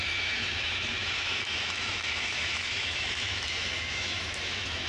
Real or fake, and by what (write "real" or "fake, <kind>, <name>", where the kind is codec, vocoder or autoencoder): fake, autoencoder, DAC-VAE